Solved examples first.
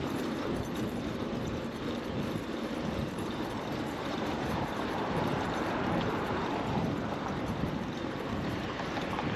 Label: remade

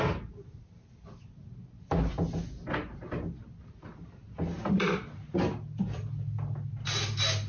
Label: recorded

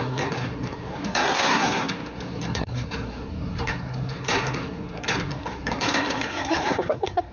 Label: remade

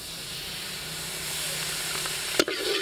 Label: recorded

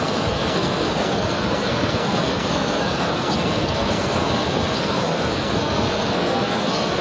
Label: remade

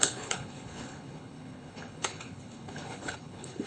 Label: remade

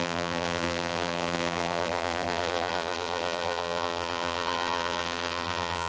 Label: remade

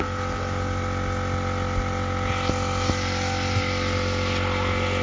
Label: recorded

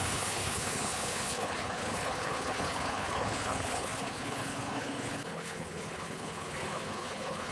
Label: remade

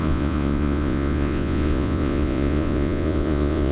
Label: remade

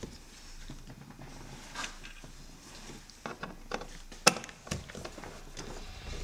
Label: recorded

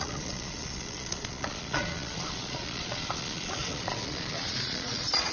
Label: remade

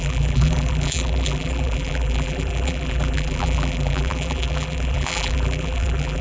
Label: remade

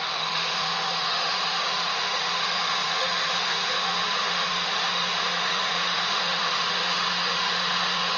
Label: remade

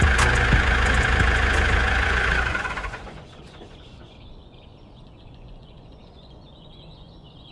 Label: remade